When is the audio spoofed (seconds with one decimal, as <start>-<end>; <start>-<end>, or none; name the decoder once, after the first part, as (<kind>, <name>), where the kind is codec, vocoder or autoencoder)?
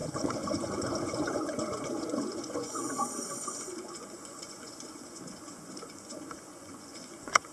0.0-7.5 (vocoder, Vocos)